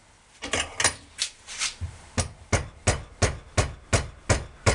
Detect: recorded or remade recorded